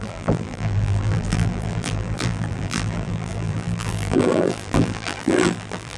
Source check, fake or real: fake